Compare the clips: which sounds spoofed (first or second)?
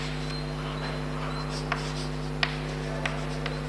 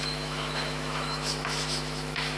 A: second